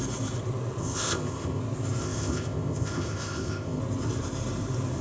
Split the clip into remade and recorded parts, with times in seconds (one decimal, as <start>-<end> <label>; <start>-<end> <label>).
0.0-0.8 recorded; 0.8-1.6 remade; 1.6-2.0 recorded; 2.0-3.8 remade; 3.8-5.0 recorded